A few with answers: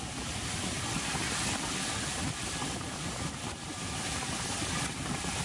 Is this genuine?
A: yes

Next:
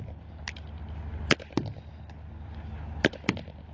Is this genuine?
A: yes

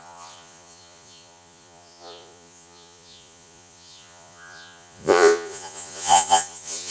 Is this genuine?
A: no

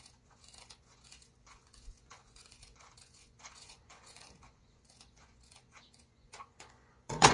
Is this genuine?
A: no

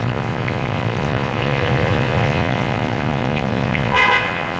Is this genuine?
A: no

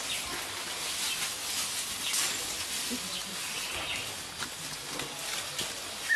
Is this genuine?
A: yes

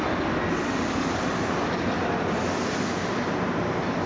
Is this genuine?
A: yes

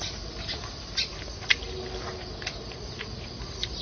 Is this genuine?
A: yes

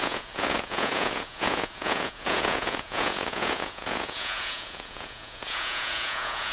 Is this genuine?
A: no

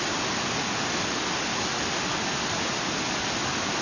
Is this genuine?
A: yes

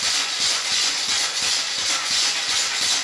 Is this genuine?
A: no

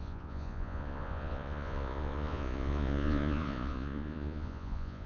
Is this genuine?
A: no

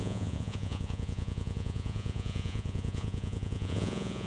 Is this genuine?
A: no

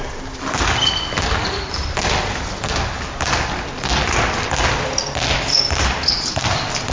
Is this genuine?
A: yes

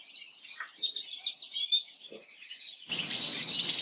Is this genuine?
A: yes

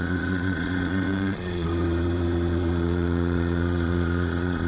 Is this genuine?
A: no